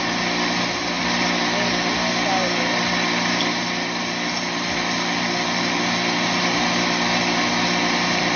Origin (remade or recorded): recorded